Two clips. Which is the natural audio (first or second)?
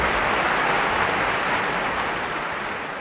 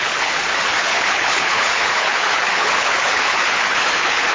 first